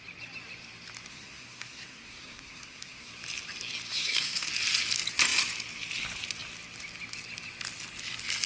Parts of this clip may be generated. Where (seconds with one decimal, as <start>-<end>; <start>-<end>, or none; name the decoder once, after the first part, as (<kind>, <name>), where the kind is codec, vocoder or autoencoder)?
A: 1.1-3.1 (codec, SNAC); 3.9-4.5